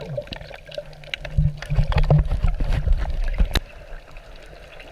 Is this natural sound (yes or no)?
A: yes